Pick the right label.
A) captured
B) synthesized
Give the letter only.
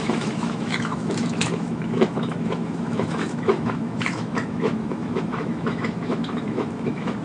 B